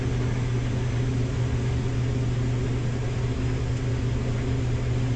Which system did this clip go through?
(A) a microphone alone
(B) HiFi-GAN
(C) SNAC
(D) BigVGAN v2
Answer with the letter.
A